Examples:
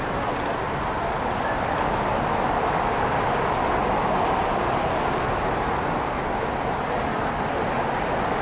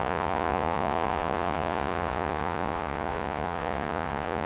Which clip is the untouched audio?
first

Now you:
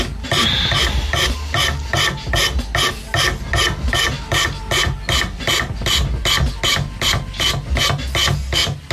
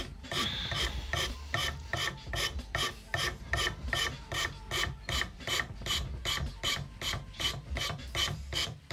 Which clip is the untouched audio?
first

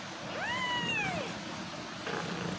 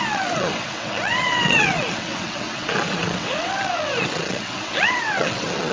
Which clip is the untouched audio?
first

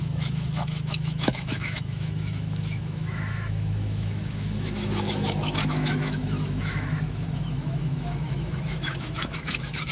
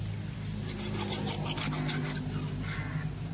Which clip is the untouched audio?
second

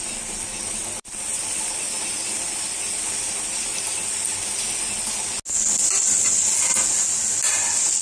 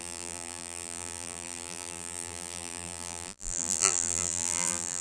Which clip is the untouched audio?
first